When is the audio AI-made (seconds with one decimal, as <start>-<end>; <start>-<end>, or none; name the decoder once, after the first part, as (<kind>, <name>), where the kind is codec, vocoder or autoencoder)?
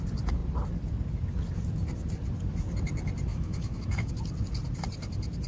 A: 3.3-4.1 (autoencoder, DAC-VAE)